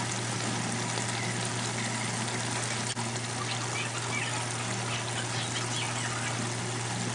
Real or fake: real